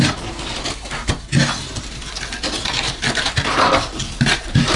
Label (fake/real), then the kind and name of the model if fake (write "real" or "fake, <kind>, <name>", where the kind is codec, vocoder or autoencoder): real